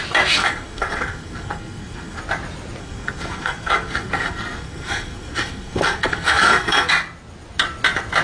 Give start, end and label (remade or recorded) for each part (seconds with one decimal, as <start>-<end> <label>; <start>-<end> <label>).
0.0-0.4 recorded; 0.4-2.2 remade; 2.2-2.8 recorded; 2.8-6.9 remade; 6.9-8.2 recorded